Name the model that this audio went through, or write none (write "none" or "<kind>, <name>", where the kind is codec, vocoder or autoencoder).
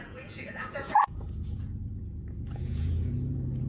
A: vocoder, Vocos